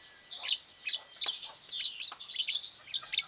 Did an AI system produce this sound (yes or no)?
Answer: no